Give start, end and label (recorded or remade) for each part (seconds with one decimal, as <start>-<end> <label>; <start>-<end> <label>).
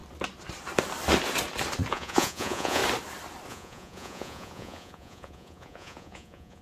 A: 0.0-1.9 recorded; 1.9-2.8 remade; 2.8-3.5 recorded; 3.5-6.6 remade